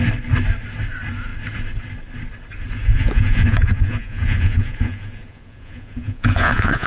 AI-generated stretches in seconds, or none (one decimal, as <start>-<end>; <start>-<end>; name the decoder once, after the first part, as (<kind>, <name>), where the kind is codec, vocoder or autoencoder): 2.8-6.9 (vocoder, Vocos)